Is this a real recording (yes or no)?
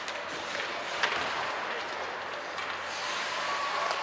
yes